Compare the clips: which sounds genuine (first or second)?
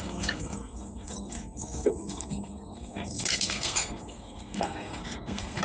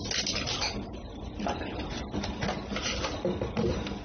second